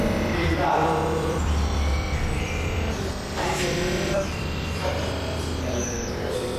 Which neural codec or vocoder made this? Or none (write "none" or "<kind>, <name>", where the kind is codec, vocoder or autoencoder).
vocoder, BigVGAN v2